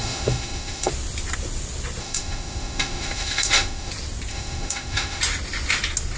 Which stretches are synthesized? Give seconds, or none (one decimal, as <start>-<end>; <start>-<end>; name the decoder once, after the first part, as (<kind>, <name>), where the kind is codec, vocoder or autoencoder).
0.0-0.9 (autoencoder, DAC-VAE); 2.0-3.9; 4.3-5.2